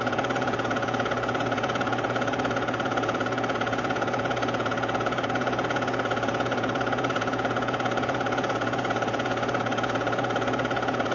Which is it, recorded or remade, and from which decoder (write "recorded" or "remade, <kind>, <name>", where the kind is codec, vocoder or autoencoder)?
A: remade, vocoder, Vocos